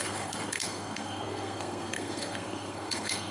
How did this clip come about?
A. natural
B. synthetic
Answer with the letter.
B